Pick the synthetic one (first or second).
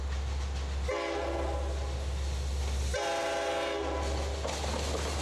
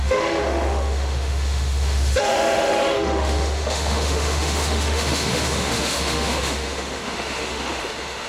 second